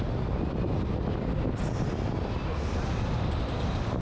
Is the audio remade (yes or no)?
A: no